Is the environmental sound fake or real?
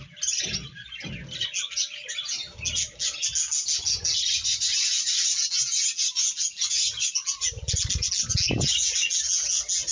real